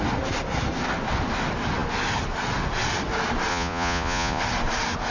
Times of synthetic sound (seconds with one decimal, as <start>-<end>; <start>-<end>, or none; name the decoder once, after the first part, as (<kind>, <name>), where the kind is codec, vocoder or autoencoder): 3.5-4.4 (vocoder, Vocos)